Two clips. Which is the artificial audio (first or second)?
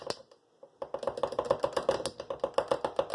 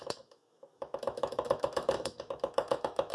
second